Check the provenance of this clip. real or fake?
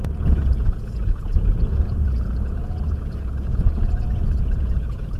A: fake